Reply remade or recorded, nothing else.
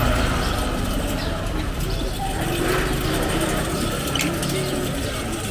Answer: recorded